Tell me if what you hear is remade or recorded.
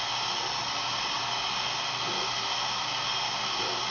recorded